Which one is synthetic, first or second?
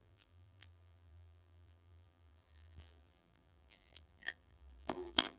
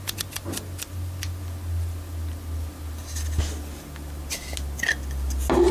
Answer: first